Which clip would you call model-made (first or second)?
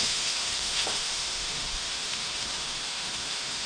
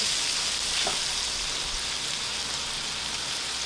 first